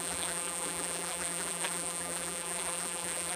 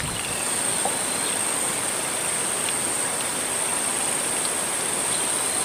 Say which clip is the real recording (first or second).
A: second